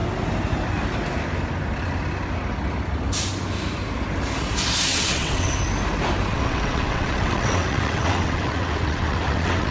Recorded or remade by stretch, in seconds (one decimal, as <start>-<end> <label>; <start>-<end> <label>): 0.0-4.9 recorded; 4.9-5.5 remade; 5.5-6.3 recorded; 6.3-9.7 remade